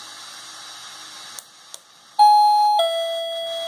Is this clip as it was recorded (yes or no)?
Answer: yes